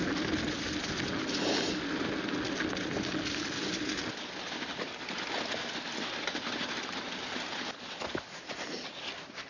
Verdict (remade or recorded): recorded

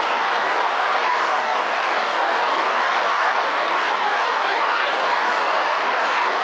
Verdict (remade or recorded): remade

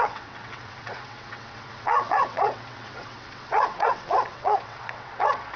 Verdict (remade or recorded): remade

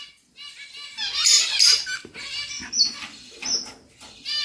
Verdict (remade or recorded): recorded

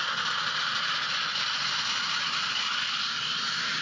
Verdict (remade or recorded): recorded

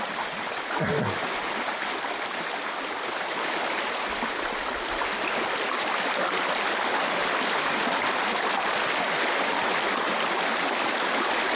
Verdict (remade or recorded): recorded